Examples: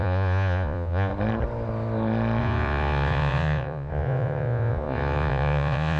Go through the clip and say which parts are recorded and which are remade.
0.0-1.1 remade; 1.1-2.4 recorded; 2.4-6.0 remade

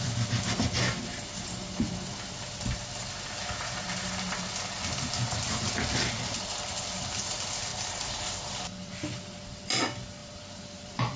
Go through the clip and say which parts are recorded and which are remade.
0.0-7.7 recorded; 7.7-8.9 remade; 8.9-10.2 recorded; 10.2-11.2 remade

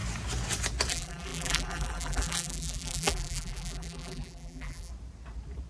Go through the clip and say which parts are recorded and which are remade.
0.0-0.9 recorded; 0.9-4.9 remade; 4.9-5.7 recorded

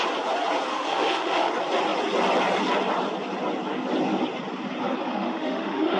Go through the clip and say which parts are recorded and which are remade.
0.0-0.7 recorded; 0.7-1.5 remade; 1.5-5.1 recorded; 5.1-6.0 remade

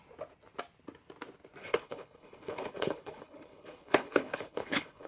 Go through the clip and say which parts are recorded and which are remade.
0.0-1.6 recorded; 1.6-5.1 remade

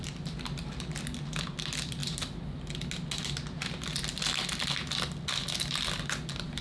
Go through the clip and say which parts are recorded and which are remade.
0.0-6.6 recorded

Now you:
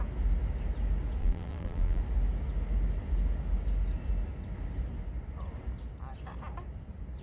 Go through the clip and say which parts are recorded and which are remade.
0.0-1.2 recorded; 1.2-2.0 remade; 2.0-7.2 recorded